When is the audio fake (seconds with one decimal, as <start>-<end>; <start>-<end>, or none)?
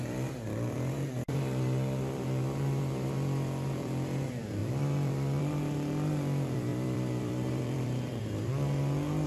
0.0-9.3